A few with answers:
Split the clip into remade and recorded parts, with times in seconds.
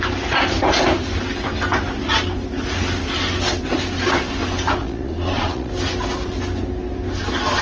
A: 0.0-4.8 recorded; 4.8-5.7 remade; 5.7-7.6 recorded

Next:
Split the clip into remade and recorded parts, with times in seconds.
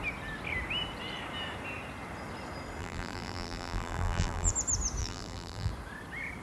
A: 0.0-2.8 recorded; 2.8-4.5 remade; 4.5-5.0 recorded; 5.0-5.7 remade; 5.7-6.4 recorded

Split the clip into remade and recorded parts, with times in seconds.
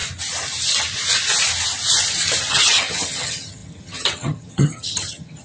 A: 0.0-2.5 recorded; 2.5-5.4 remade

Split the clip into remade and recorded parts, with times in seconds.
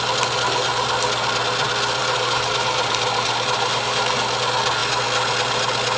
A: 0.0-2.0 recorded; 2.0-4.2 remade; 4.2-6.0 recorded